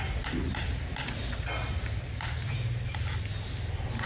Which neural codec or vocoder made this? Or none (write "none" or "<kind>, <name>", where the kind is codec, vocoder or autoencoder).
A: none